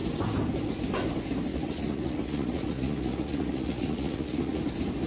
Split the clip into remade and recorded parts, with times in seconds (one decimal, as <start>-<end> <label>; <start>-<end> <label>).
0.0-1.5 recorded; 1.5-4.6 remade; 4.6-5.1 recorded